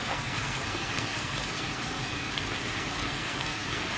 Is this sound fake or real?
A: fake